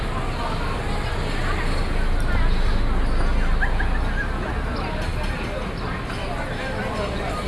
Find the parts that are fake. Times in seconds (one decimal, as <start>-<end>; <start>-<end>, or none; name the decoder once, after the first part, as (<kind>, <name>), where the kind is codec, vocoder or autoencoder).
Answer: none

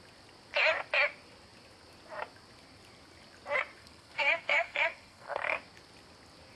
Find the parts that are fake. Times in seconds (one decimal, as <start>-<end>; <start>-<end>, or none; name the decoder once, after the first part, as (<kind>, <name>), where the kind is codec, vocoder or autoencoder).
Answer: 3.8-5.6 (codec, SNAC)

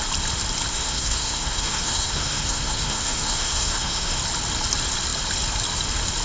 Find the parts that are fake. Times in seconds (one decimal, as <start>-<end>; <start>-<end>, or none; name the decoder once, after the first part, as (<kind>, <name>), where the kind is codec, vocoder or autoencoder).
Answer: 0.7-4.2 (codec, SNAC)

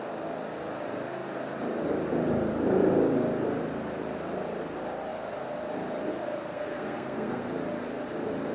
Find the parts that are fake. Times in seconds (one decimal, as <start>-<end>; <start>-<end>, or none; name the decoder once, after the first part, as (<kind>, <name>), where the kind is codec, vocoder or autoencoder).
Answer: 6.5-7.5 (codec, SNAC)